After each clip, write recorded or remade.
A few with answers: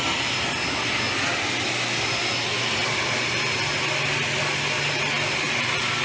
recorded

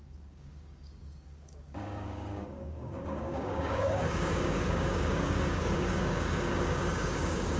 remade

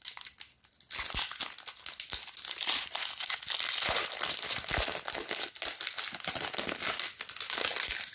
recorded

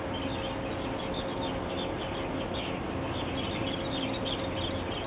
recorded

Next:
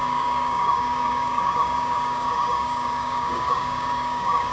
remade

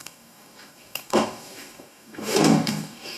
remade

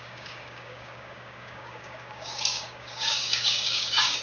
remade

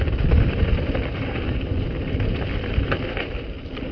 recorded